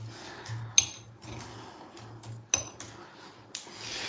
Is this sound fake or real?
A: real